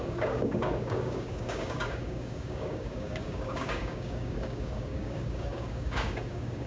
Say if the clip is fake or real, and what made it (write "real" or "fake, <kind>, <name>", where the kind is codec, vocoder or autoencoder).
fake, codec, DAC